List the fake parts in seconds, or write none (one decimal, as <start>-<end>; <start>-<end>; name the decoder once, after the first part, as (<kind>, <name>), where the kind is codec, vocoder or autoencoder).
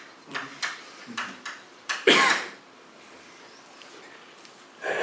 0.5-3.5 (vocoder, BigVGAN v2)